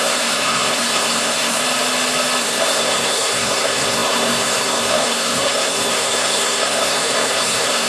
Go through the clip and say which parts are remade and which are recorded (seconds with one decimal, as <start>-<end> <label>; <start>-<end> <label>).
0.0-1.6 remade; 1.6-2.4 recorded; 2.4-7.9 remade